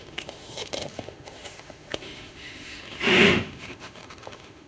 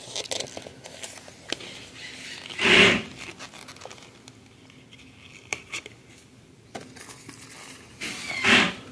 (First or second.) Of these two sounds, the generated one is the first